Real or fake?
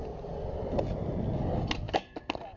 real